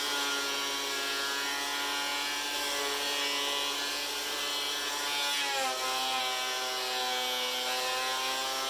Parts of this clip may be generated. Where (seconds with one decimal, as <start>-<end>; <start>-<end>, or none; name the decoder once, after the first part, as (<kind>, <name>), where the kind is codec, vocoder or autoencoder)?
none